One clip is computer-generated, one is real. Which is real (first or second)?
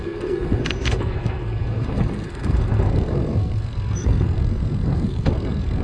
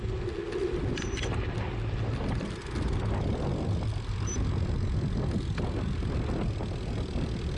second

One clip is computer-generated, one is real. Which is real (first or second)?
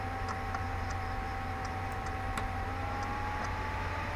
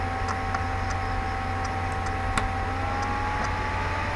second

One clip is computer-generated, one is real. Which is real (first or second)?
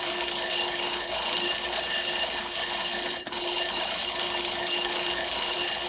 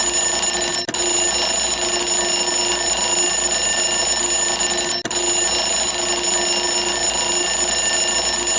second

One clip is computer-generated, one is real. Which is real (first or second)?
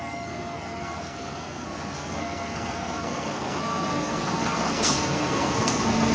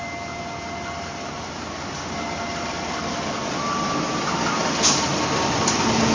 second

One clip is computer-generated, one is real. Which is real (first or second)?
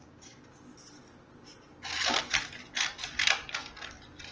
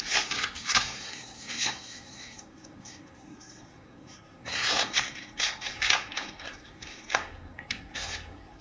first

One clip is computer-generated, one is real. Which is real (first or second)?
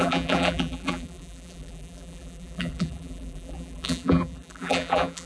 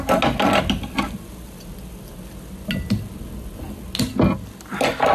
second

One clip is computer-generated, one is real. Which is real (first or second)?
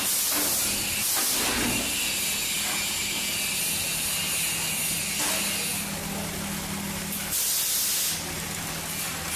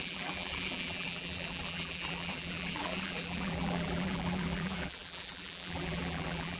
first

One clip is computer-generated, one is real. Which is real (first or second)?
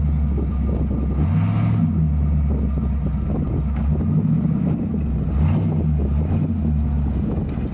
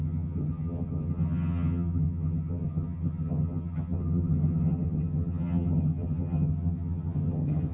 first